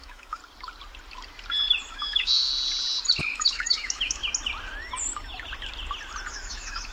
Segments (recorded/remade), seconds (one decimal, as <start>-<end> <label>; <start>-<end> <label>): 0.0-0.4 remade; 0.4-1.9 recorded; 1.9-2.5 remade; 2.5-3.2 recorded; 3.2-4.2 remade; 4.2-6.3 recorded; 6.3-6.9 remade